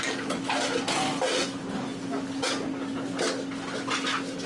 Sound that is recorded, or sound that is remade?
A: recorded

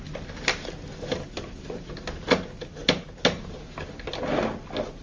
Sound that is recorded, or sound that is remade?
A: recorded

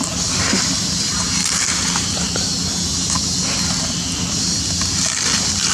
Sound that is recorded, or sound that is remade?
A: recorded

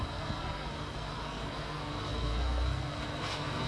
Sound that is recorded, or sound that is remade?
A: remade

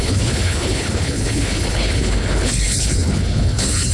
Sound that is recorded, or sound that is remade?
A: remade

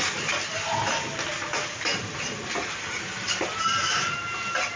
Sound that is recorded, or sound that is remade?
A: recorded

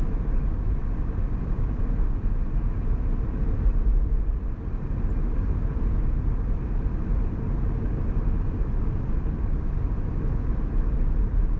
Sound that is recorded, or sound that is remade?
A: recorded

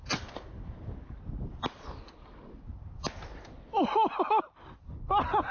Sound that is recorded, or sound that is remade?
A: recorded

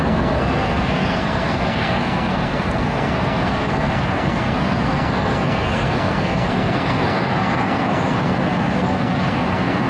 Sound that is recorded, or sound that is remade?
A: remade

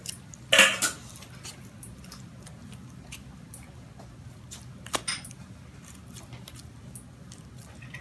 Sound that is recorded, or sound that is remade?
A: recorded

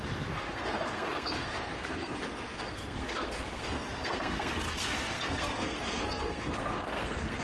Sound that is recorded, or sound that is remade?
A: remade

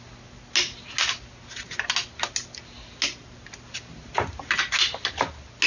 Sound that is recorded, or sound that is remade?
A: recorded